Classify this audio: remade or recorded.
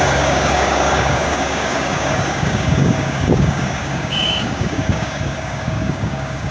remade